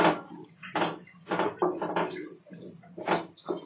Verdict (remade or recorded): recorded